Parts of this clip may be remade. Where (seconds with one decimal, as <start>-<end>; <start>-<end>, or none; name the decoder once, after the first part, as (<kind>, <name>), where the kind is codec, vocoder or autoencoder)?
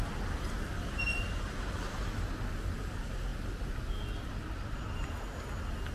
none